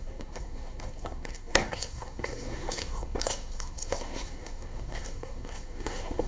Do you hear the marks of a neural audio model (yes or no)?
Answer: yes